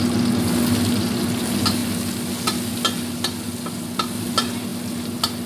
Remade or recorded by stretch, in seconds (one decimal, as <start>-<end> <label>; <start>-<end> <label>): 0.0-5.5 recorded